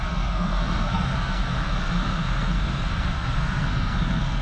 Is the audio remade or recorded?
remade